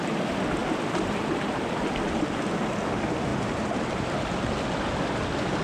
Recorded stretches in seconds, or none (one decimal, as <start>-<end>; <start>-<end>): 0.0-0.6; 1.8-3.3; 4.4-5.6